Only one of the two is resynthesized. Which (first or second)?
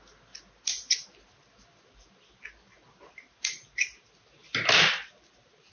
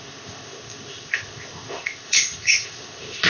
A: second